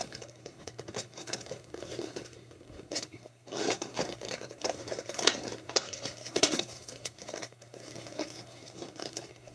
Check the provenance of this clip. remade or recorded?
remade